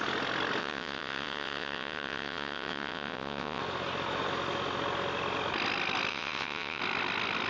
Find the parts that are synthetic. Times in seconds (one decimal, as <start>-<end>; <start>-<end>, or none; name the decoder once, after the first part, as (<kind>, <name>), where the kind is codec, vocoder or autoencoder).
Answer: 0.6-3.6 (vocoder, WaveNeXt); 6.1-6.8